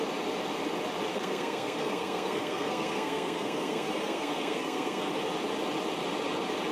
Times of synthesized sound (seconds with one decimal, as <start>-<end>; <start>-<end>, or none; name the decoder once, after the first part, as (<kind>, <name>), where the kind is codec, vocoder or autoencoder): 1.1-5.1 (codec, SNAC)